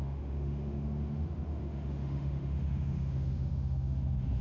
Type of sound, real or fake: fake